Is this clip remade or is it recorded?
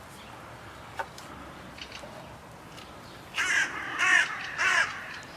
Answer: recorded